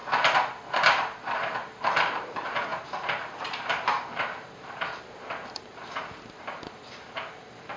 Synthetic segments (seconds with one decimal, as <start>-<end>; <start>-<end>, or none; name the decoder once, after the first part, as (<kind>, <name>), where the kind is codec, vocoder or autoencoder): 0.0-7.8 (vocoder, BigVGAN v2)